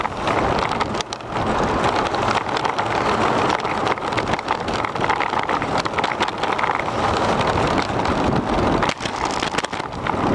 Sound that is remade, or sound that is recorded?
recorded